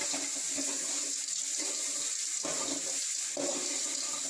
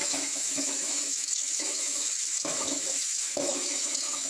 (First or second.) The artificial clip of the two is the second